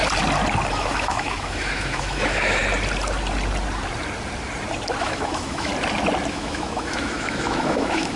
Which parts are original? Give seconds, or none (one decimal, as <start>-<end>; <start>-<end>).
0.0-0.7; 2.6-5.0; 5.7-6.3